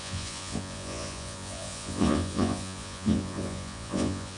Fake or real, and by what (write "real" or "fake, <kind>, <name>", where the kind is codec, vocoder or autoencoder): fake, vocoder, Vocos